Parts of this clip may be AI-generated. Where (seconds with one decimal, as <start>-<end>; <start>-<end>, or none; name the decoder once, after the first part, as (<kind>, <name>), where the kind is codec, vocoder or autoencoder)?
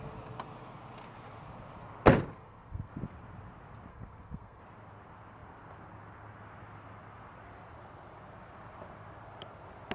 2.3-2.9 (codec, SNAC); 3.9-4.6